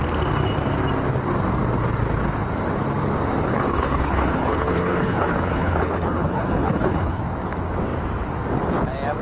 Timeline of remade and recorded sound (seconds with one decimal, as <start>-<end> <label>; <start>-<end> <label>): 0.0-3.5 recorded; 3.5-7.2 remade; 7.2-9.2 recorded